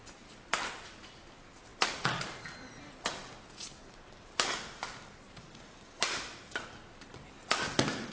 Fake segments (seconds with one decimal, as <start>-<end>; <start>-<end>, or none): none